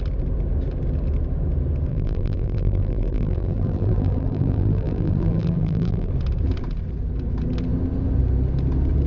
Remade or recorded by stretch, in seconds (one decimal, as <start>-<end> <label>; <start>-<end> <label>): 0.0-1.9 recorded; 1.9-6.1 remade; 6.1-9.1 recorded